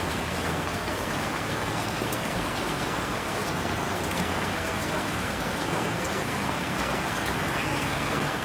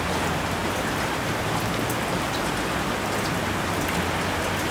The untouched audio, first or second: second